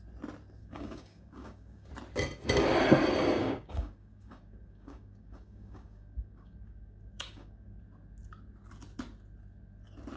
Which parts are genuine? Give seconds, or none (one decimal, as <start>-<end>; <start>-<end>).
0.0-0.6; 1.9-3.4; 7.8-10.2